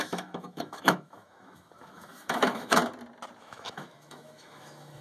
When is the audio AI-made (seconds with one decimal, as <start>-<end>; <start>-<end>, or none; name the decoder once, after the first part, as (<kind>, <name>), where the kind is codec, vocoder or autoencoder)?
0.0-2.8 (autoencoder, DAC-VAE); 3.4-5.0